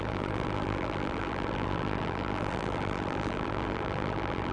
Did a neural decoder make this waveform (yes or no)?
yes